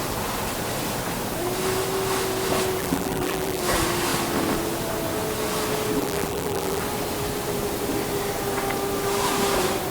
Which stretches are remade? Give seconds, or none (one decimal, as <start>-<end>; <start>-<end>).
2.8-3.6; 6.0-6.8